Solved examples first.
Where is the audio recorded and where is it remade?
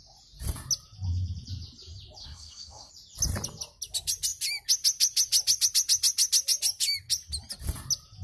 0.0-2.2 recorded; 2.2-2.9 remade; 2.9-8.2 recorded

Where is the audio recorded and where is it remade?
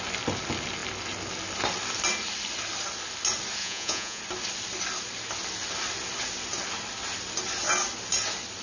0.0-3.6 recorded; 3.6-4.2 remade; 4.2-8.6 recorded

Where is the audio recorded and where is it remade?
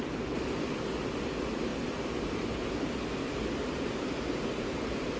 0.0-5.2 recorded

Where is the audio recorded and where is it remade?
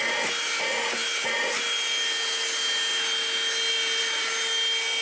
0.0-5.0 recorded